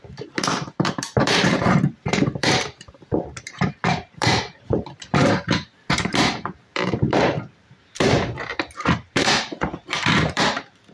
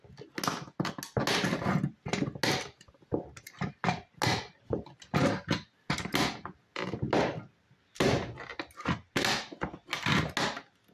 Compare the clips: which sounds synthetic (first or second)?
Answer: first